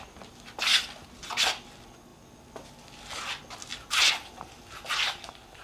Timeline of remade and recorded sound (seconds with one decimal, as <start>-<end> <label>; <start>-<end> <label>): 0.0-5.6 recorded